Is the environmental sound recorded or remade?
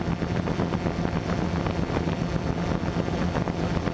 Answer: recorded